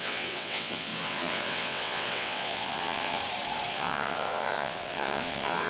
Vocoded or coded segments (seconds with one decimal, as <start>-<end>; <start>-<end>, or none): 0.0-3.2; 3.7-5.7